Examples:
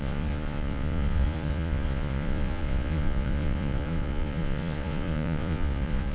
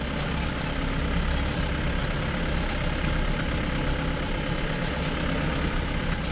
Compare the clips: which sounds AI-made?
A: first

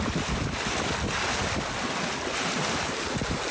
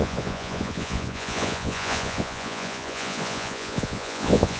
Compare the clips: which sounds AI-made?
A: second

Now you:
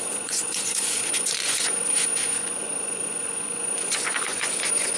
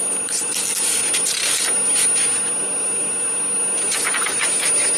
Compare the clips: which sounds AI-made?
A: first